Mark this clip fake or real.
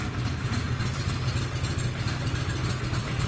real